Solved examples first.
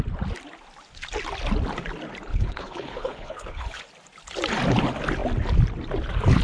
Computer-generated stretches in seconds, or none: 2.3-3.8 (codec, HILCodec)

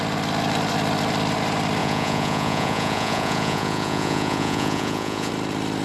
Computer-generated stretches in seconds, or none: 1.8-5.3 (vocoder, Vocos)